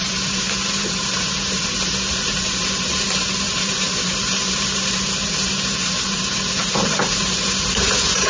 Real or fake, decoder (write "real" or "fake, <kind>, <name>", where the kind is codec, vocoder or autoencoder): fake, vocoder, BigVGAN v2